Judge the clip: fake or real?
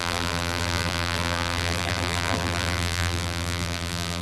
fake